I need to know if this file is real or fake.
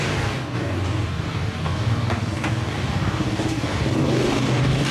fake